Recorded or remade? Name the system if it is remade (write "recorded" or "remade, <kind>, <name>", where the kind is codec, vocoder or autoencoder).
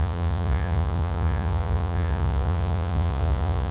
remade, vocoder, Vocos